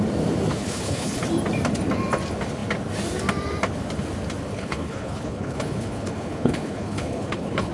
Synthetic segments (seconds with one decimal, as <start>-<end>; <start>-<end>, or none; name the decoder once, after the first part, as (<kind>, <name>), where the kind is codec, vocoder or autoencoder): 0.6-1.2 (codec, HILCodec); 4.5-7.7